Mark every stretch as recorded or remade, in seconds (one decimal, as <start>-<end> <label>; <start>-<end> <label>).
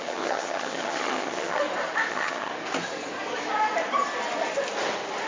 0.0-1.6 remade; 1.6-2.1 recorded; 2.1-2.5 remade; 2.5-5.3 recorded